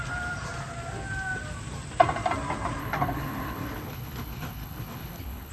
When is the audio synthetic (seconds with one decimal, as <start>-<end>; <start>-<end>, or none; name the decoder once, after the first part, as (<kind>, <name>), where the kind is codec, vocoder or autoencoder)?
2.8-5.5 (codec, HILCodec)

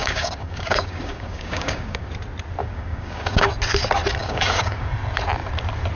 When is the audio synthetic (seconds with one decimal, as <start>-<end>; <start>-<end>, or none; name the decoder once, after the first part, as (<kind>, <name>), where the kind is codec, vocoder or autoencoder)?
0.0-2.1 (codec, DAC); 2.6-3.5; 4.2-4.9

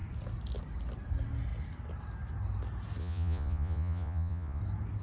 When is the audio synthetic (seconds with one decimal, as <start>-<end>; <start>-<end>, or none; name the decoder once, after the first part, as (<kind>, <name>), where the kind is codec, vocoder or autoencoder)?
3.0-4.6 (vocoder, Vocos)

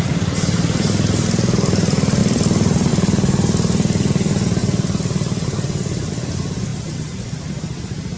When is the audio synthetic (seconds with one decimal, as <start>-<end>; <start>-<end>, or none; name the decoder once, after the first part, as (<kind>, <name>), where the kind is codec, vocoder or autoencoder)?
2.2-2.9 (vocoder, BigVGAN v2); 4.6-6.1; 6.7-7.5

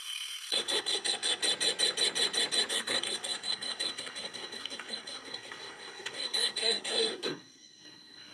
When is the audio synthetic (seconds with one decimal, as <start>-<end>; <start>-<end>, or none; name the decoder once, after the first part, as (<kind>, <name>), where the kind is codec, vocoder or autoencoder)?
0.0-1.4 (codec, SNAC); 2.7-8.3

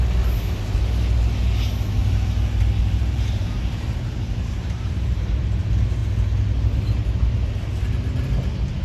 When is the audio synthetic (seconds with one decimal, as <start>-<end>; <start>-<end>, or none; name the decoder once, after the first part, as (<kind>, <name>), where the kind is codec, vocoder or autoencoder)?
2.0-5.6 (vocoder, BigVGAN v2)